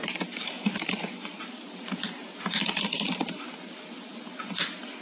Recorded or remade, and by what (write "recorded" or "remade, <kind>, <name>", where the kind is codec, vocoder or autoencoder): recorded